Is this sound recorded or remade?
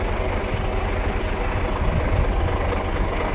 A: recorded